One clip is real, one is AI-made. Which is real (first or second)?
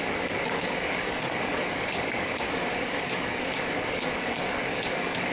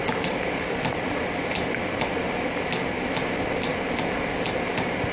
second